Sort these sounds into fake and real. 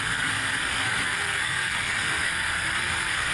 fake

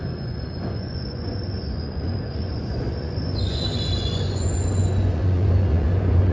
fake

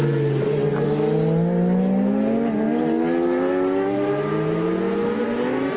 real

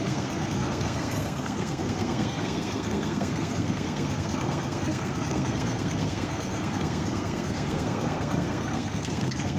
fake